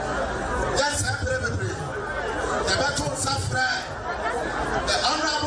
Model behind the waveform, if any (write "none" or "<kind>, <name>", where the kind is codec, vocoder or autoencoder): none